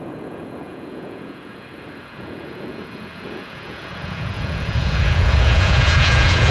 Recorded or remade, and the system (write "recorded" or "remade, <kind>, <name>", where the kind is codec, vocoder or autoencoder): remade, vocoder, Vocos